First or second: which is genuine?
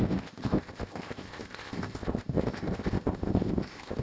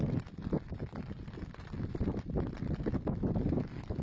second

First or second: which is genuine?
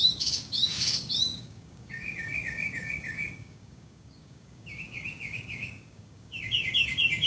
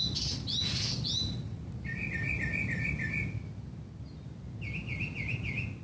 second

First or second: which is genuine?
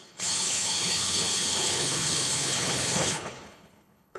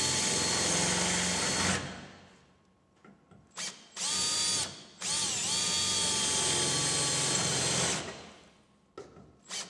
second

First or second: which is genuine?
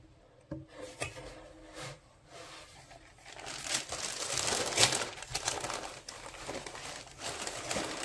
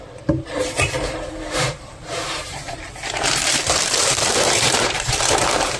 first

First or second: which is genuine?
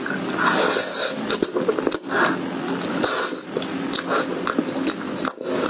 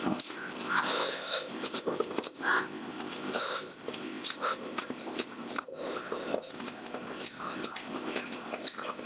first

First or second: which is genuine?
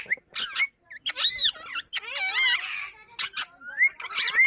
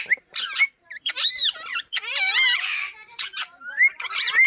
first